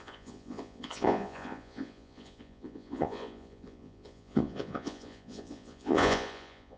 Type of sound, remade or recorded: remade